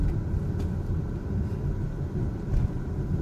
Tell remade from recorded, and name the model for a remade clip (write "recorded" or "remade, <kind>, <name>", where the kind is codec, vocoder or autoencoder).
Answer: recorded